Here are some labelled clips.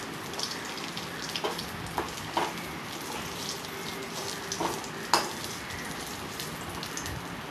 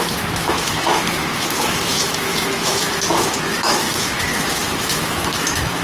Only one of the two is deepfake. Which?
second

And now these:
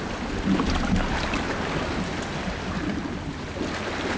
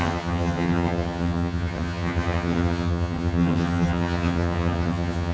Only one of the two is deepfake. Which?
second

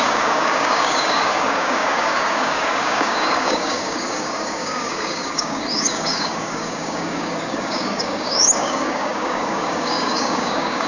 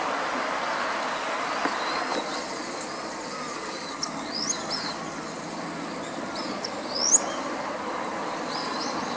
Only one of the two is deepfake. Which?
first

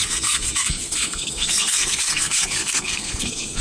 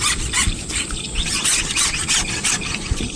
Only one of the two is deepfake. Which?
first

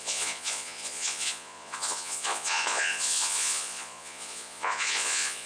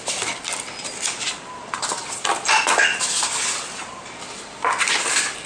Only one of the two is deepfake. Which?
first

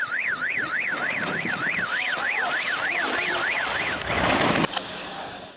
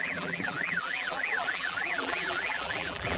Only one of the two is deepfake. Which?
second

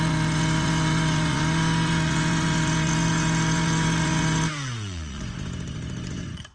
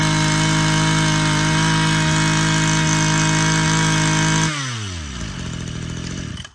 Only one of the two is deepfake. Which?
first